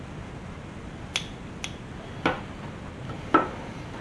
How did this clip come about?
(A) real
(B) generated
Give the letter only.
A